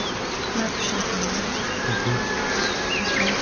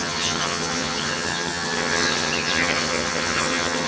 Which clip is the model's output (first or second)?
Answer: second